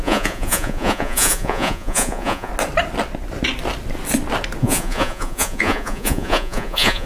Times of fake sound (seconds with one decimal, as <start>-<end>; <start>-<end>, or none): 0.0-2.5; 4.6-7.1